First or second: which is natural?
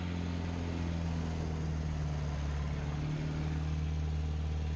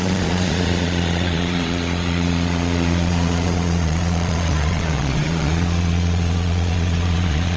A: first